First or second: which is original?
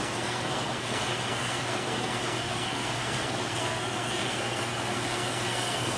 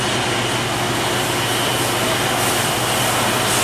second